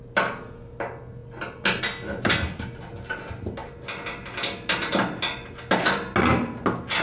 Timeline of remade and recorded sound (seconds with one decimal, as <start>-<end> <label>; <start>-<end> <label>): 0.0-7.0 recorded